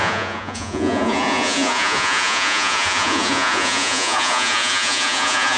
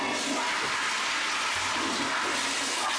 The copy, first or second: first